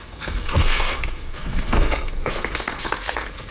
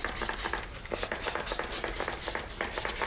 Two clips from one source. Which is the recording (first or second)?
second